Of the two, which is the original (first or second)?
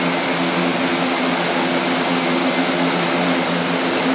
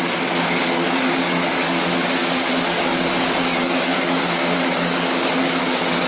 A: first